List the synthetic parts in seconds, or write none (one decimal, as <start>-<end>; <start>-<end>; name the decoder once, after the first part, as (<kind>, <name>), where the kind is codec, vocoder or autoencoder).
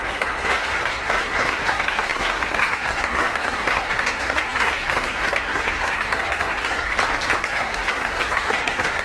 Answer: 0.0-6.9 (codec, SNAC); 7.4-9.0